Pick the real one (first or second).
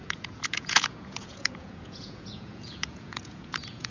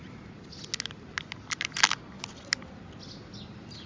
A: second